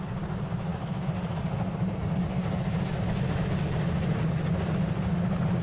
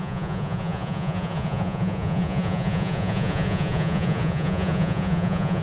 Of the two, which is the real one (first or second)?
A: first